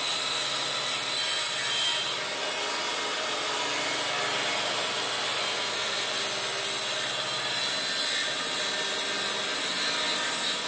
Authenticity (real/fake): real